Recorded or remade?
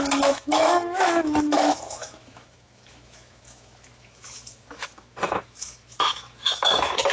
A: remade